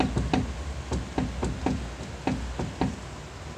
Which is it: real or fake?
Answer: real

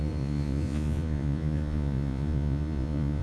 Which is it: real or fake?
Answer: fake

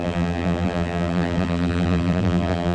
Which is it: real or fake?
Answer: fake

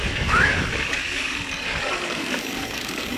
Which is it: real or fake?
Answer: fake